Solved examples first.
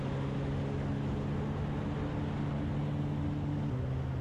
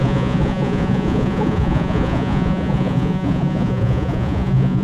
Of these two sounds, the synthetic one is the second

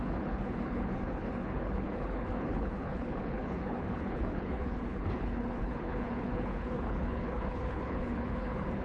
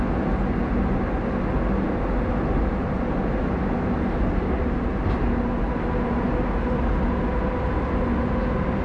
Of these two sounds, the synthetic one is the first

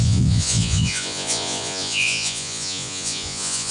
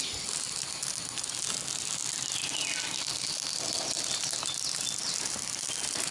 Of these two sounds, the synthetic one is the first